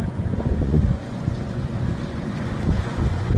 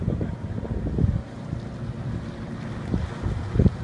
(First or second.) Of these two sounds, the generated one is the first